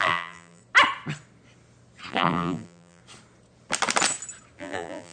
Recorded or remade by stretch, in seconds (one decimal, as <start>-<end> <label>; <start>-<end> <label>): 0.0-0.6 remade; 0.6-2.1 recorded; 2.1-3.0 remade; 3.0-4.6 recorded; 4.6-5.1 remade